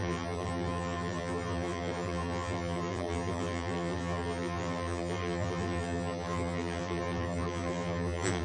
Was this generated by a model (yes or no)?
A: yes